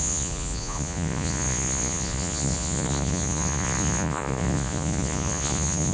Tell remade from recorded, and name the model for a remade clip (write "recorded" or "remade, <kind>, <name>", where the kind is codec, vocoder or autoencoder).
remade, vocoder, Vocos